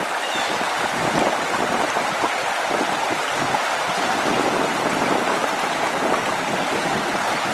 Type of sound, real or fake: real